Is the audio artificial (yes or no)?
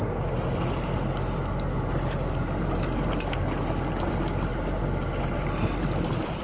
no